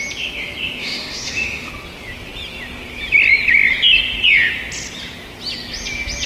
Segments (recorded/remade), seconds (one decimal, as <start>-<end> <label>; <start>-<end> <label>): 0.0-0.8 recorded; 0.8-1.7 remade; 1.7-6.3 recorded